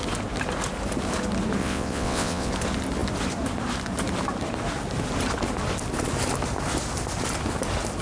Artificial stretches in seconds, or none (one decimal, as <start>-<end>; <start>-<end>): 1.6-2.5